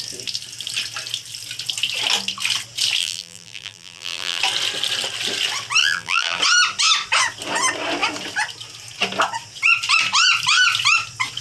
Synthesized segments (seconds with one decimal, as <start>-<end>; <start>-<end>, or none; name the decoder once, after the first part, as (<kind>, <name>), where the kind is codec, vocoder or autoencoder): 3.0-4.4 (vocoder, BigVGAN v2); 5.8-6.4